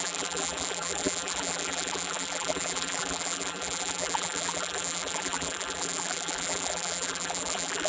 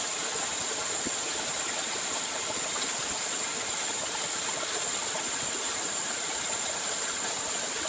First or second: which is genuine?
second